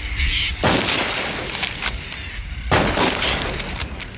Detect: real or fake real